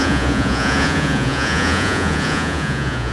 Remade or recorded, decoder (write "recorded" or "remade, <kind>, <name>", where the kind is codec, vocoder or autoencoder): remade, vocoder, Vocos